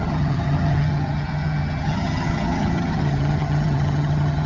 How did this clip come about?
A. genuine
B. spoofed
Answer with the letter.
B